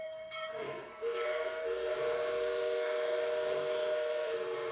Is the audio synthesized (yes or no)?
yes